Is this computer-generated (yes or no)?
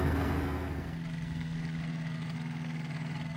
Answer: yes